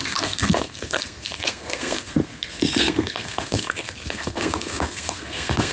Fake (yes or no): yes